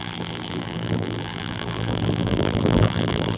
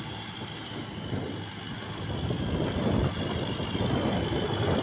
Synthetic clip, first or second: first